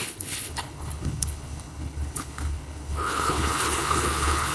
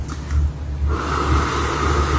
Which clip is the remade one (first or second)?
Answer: first